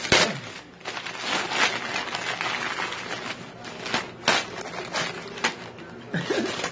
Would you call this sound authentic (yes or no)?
yes